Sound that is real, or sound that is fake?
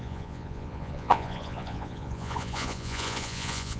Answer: fake